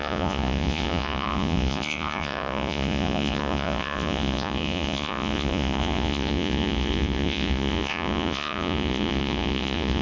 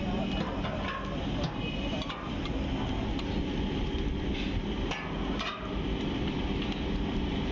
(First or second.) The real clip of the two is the second